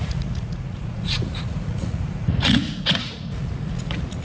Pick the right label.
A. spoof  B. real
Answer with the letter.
A